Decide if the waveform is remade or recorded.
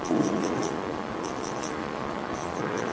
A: remade